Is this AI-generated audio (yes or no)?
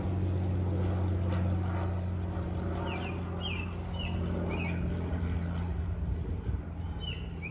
no